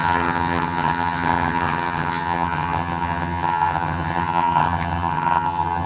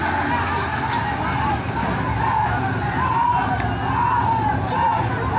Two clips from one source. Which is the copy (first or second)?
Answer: first